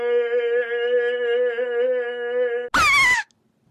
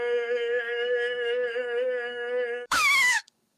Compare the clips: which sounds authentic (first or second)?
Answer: first